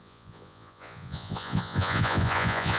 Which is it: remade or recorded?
remade